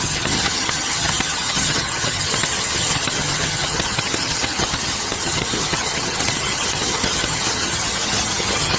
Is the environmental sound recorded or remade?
remade